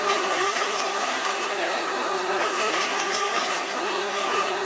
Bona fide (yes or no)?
no